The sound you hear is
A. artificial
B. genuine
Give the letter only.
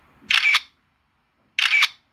B